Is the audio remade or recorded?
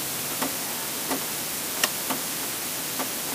recorded